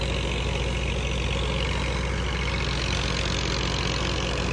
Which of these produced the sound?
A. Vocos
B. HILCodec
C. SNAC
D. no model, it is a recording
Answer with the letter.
D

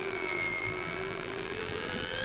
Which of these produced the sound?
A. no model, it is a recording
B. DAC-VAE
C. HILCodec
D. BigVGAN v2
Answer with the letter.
D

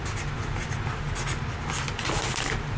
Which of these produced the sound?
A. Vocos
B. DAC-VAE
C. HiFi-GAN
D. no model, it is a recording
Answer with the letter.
D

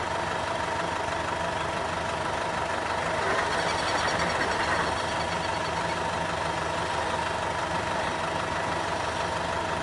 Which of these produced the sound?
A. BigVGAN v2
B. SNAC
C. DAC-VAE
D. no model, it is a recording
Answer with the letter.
D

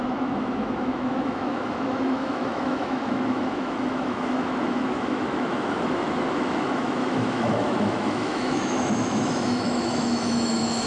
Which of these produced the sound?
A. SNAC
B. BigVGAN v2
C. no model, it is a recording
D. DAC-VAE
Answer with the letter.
D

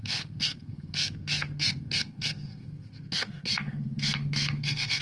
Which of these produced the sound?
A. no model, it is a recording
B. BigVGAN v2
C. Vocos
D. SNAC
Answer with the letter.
D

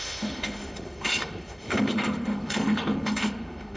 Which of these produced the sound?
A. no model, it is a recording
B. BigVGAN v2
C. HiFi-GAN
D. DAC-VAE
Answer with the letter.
D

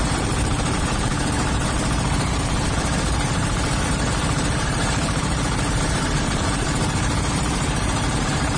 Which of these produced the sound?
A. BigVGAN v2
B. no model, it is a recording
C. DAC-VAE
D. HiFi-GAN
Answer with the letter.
A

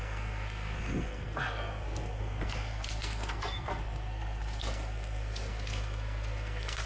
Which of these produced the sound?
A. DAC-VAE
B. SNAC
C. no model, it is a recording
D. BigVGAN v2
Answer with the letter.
B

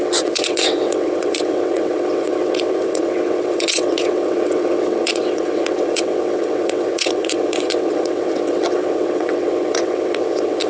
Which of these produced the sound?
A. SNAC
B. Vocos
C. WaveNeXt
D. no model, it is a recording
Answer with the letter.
C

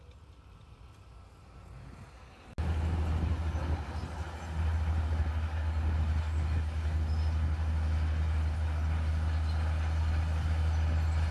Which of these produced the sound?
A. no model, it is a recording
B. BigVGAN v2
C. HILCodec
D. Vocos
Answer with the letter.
A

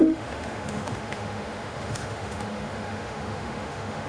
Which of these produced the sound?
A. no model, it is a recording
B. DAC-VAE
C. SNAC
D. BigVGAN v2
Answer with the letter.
B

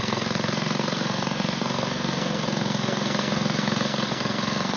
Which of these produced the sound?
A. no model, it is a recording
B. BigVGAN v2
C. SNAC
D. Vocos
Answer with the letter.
C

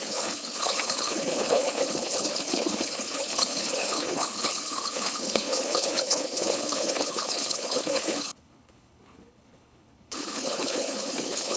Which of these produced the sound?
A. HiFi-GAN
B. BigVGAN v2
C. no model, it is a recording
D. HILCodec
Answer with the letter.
D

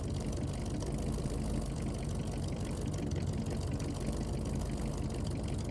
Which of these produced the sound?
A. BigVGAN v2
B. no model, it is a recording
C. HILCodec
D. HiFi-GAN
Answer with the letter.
A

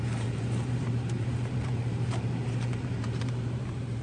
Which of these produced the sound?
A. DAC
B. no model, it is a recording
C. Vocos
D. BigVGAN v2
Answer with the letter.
D